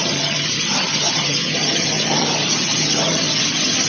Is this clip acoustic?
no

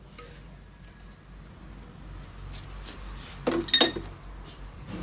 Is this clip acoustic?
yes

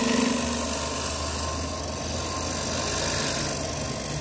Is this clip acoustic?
yes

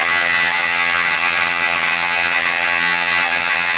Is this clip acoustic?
no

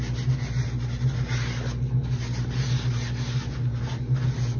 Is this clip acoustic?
yes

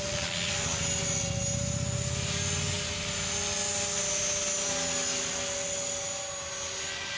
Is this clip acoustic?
yes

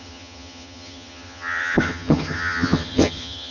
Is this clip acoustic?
no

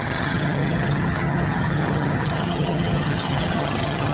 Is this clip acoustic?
no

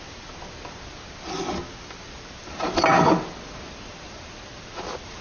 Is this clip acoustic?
yes